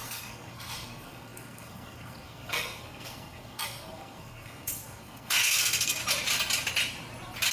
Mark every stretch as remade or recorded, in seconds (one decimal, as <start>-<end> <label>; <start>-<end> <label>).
0.0-6.0 remade; 6.0-7.5 recorded